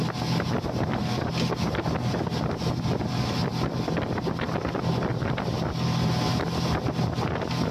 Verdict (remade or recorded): recorded